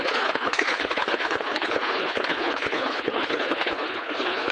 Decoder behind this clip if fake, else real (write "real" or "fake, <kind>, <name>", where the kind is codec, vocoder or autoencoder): fake, codec, HILCodec